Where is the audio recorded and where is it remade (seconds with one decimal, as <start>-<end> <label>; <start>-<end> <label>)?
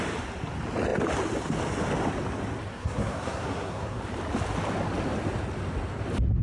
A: 0.0-2.7 recorded; 2.7-4.0 remade; 4.0-6.4 recorded